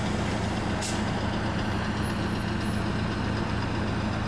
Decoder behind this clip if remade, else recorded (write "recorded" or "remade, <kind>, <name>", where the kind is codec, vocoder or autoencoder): recorded